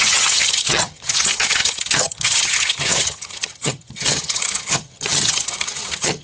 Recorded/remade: remade